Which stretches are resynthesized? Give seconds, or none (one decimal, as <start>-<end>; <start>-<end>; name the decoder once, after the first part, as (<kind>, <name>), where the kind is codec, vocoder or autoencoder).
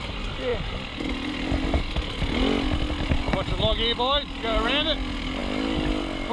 none